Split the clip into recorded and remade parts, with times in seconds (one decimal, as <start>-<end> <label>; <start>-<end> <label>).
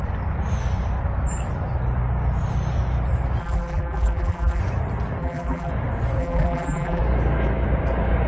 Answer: 0.0-3.4 recorded; 3.4-4.6 remade; 4.6-5.2 recorded; 5.2-5.7 remade; 5.7-6.2 recorded; 6.2-7.0 remade; 7.0-8.3 recorded